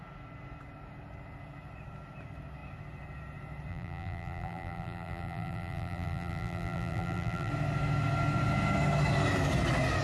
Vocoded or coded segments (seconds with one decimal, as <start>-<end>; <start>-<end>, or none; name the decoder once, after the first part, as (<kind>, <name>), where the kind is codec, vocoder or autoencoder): 3.7-7.5 (vocoder, BigVGAN v2)